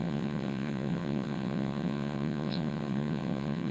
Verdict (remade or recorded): remade